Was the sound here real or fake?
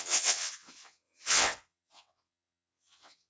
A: fake